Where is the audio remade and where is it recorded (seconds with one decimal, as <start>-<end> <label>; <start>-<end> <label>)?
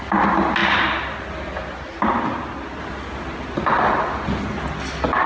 0.0-5.3 recorded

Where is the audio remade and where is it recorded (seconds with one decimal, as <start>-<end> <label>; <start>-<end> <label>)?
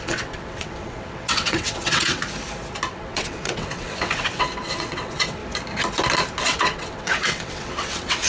0.0-2.2 remade; 2.2-2.9 recorded; 2.9-5.4 remade; 5.4-6.4 recorded; 6.4-8.3 remade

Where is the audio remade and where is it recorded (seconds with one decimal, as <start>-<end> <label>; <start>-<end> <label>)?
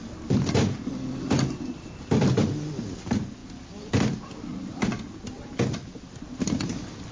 0.0-7.1 recorded